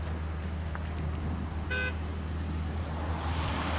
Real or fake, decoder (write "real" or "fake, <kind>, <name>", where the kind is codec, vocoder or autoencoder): real